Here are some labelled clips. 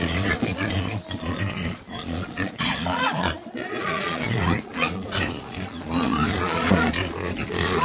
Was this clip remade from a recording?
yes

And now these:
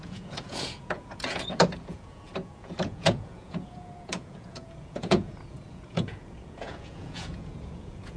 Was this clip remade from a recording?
yes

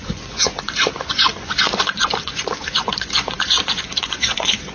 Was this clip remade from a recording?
yes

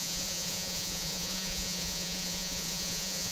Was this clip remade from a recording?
yes